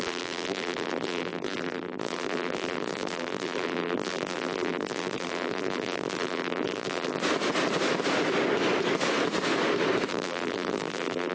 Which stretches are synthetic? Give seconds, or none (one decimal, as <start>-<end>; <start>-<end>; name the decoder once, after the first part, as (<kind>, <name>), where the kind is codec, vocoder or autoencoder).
0.0-7.2 (vocoder, BigVGAN v2); 10.1-11.3